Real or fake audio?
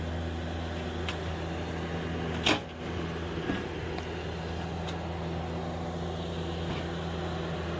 real